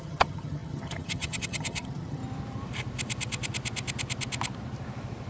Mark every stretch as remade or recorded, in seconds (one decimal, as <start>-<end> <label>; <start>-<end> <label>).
0.0-2.2 remade; 2.2-5.3 recorded